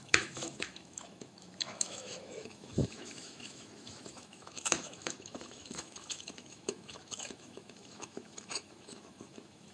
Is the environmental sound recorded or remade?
remade